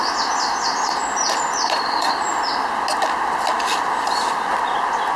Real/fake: real